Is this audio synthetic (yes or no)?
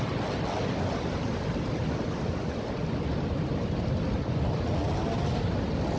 no